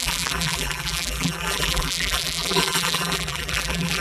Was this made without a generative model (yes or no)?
no